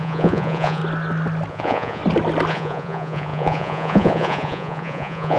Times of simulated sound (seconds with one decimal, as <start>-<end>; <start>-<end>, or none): 0.0-0.8; 1.5-2.0; 2.5-5.4

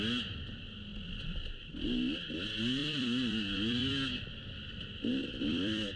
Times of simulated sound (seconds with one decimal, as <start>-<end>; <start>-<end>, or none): 2.8-3.9; 5.1-6.0